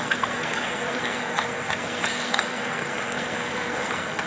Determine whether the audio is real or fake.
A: fake